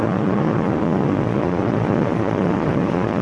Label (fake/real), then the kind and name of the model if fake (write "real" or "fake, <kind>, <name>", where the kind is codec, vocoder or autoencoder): fake, vocoder, Vocos